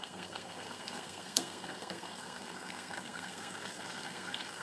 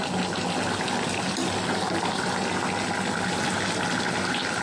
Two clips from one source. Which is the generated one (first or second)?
first